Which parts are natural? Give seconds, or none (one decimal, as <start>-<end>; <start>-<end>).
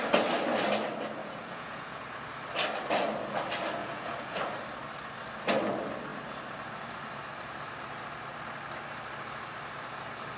0.0-1.2; 2.1-3.8; 4.4-10.4